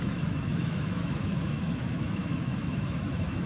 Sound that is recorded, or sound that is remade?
remade